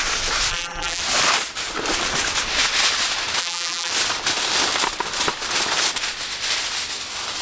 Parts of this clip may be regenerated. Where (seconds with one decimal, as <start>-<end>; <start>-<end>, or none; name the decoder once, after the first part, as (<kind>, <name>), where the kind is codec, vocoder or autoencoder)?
0.5-1.0 (vocoder, BigVGAN v2); 3.4-3.9